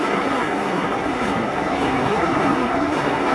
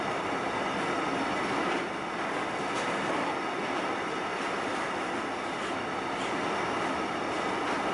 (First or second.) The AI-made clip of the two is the first